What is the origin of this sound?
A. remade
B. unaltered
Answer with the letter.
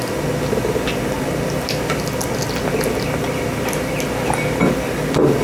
B